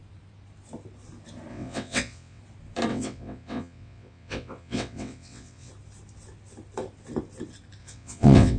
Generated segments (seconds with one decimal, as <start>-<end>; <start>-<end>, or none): 1.5-2.4; 2.9-5.7; 7.8-8.6